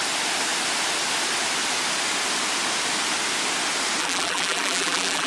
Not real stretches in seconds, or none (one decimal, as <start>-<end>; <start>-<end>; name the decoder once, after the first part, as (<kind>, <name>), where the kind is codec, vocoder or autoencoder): 4.0-5.3 (vocoder, BigVGAN v2)

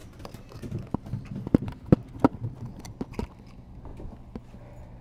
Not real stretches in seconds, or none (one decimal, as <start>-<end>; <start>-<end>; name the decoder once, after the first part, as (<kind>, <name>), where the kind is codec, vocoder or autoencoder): none

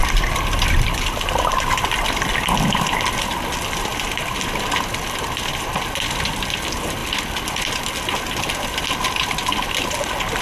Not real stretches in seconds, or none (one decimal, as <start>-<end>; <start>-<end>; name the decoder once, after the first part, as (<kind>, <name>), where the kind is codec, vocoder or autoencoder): 0.0-1.1 (vocoder, BigVGAN v2)

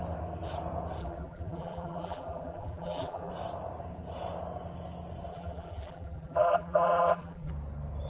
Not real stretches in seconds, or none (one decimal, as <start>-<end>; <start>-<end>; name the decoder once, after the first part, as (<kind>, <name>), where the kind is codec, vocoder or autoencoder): 1.0-3.3 (vocoder, BigVGAN v2); 5.3-7.5

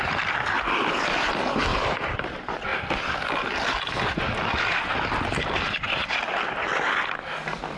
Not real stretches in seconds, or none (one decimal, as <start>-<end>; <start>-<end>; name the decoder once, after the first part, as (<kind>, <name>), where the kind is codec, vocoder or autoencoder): 1.7-2.3 (vocoder, BigVGAN v2)

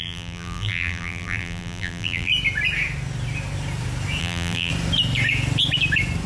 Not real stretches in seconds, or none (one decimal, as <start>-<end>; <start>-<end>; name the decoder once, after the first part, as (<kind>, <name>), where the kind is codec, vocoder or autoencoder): 0.0-2.3 (vocoder, BigVGAN v2); 4.2-4.7

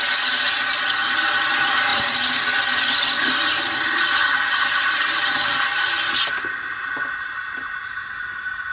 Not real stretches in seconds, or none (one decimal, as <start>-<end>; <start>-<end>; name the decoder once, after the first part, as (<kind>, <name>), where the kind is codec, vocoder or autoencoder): 1.9-3.6 (vocoder, BigVGAN v2)